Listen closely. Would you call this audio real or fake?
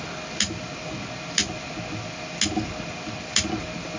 real